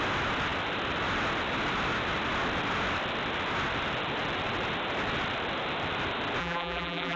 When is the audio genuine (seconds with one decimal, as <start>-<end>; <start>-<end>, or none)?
0.0-6.4